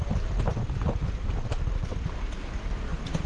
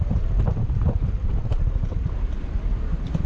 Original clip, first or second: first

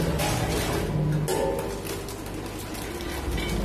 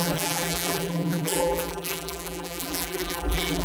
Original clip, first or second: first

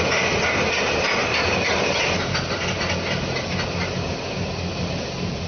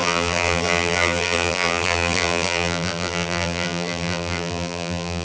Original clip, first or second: first